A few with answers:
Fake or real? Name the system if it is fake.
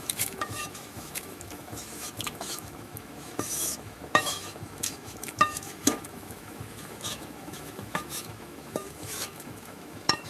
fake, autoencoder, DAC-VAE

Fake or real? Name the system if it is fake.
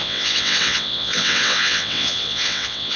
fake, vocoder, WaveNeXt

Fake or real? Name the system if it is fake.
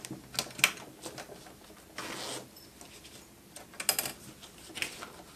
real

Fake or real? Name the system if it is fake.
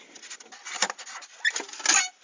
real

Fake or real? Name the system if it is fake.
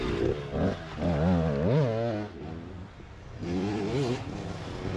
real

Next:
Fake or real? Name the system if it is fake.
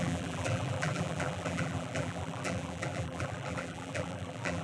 fake, vocoder, BigVGAN v2